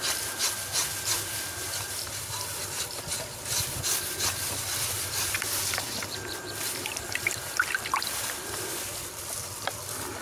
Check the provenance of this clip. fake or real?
fake